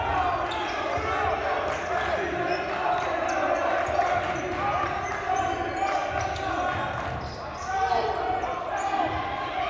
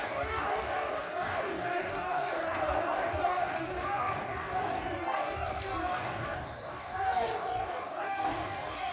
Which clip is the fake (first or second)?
second